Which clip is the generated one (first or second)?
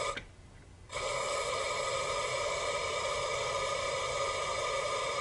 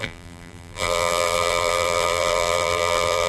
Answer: second